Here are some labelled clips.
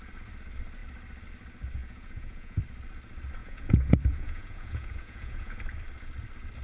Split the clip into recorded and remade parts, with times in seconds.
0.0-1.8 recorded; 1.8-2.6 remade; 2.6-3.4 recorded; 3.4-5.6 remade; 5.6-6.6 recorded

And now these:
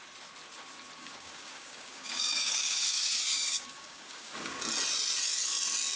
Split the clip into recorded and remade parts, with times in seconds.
0.0-1.0 recorded; 1.0-4.6 remade; 4.6-6.0 recorded

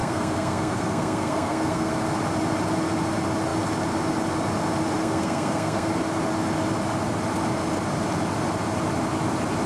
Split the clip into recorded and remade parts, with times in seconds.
0.0-1.9 remade; 1.9-5.0 recorded; 5.0-5.9 remade; 5.9-9.7 recorded

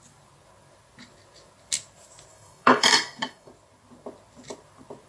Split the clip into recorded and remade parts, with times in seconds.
0.0-2.3 recorded; 2.3-3.5 remade; 3.5-5.1 recorded